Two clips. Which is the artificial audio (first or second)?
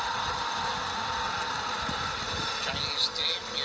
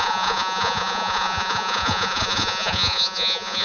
second